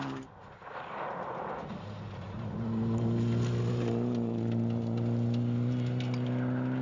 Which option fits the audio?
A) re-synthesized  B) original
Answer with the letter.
B